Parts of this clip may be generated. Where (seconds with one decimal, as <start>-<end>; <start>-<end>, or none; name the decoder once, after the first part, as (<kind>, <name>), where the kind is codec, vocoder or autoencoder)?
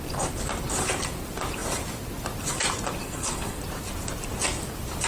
3.0-3.6 (codec, SNAC)